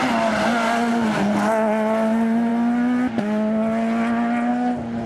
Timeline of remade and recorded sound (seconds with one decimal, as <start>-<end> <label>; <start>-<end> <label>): 0.0-5.1 recorded